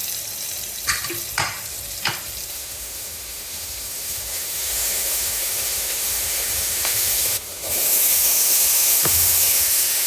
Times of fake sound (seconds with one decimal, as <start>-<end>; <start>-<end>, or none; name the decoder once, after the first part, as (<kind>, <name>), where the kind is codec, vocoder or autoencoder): 2.5-10.1 (autoencoder, DAC-VAE)